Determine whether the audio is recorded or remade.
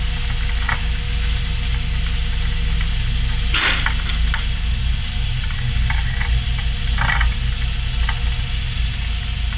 recorded